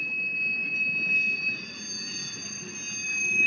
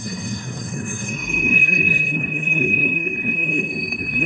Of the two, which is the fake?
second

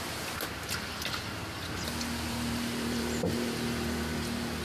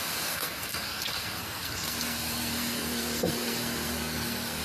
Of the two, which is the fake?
second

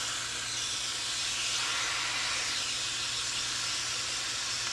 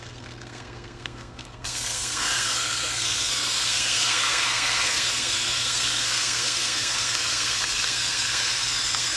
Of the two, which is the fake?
second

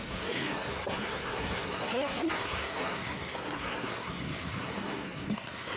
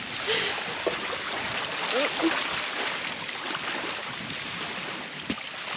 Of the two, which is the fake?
first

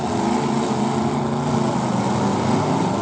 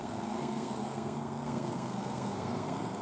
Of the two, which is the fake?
second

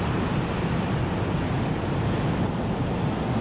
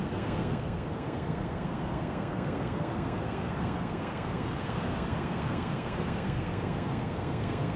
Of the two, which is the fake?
second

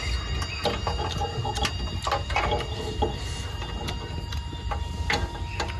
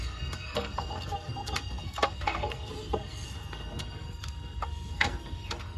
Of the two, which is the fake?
second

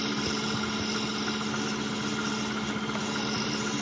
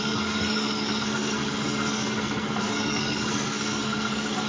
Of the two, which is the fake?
second